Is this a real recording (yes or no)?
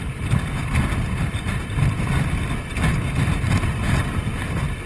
yes